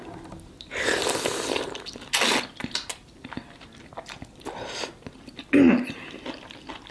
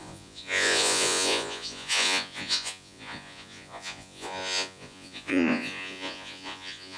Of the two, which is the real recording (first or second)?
first